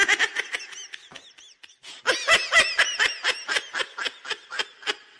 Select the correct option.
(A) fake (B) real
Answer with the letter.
B